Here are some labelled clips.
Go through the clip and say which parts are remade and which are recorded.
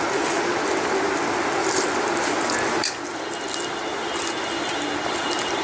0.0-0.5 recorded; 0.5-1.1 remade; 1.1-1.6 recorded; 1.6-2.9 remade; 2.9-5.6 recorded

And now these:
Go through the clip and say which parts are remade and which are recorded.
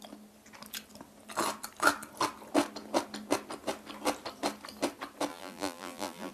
0.0-5.3 recorded; 5.3-6.3 remade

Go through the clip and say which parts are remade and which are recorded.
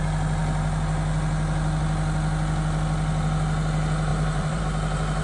0.0-4.1 recorded; 4.1-4.6 remade; 4.6-5.2 recorded